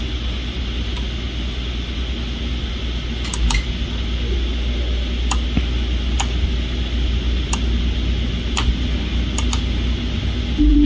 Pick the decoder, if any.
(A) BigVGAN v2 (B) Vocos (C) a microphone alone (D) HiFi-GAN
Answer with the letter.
C